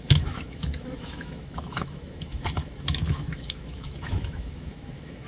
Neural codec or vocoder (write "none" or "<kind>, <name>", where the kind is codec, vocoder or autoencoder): autoencoder, DAC-VAE